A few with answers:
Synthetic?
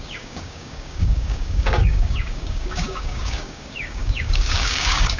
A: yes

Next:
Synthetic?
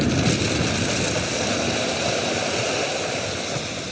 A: no